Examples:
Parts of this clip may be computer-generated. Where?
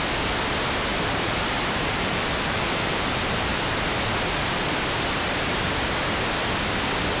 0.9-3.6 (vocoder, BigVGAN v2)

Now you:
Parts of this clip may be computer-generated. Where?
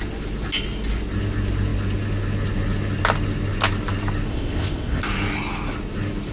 4.3-5.0 (codec, ZipCodec)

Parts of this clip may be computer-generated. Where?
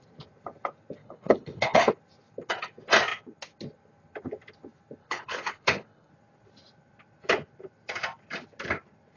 1.0-1.9 (codec, HILCodec); 5.0-6.1